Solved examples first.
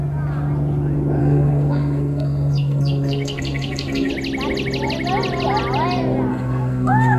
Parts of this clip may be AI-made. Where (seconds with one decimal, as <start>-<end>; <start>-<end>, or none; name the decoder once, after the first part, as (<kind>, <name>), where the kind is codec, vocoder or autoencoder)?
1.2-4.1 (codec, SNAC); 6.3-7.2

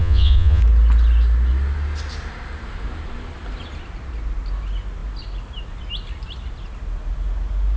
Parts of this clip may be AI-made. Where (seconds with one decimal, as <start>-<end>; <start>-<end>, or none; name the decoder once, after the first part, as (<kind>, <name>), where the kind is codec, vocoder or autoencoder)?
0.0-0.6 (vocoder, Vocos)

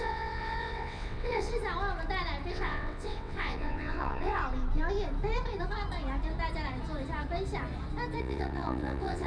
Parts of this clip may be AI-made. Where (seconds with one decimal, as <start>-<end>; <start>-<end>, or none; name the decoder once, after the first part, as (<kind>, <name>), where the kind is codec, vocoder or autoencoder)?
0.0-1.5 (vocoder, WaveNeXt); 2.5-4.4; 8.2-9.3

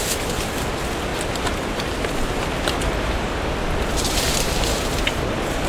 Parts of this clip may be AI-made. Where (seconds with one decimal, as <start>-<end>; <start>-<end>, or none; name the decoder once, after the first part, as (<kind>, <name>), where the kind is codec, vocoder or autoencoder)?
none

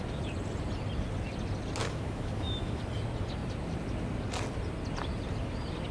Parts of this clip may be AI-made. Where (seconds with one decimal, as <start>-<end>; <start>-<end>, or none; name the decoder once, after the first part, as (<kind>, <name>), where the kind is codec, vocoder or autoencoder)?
1.8-2.8 (autoencoder, DAC-VAE)

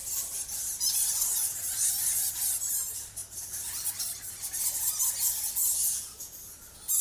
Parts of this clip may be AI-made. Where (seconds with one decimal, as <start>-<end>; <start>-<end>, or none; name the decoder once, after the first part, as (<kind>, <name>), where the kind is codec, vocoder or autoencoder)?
5.8-6.4 (vocoder, Vocos)

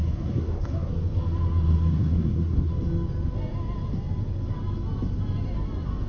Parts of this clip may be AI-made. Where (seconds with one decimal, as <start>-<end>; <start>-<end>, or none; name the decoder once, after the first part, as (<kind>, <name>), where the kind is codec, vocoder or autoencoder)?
0.0-0.9 (codec, SNAC); 1.9-2.7